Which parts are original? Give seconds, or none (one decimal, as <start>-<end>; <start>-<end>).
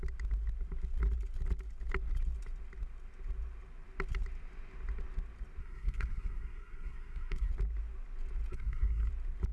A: 0.0-5.6; 7.5-8.5; 9.1-9.5